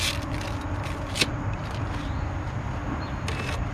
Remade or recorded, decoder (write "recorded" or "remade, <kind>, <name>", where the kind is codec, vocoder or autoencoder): recorded